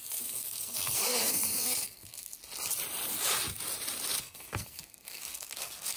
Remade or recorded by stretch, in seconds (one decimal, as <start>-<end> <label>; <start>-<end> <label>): 0.0-2.4 remade; 2.4-4.2 recorded; 4.2-6.0 remade